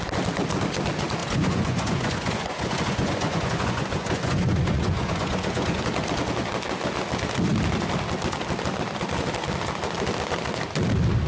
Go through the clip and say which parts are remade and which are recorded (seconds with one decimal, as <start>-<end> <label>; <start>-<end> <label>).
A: 0.0-1.2 recorded; 1.2-5.8 remade; 5.8-11.3 recorded